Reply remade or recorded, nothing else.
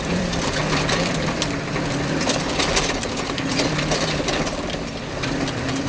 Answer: remade